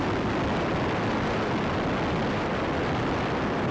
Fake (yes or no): no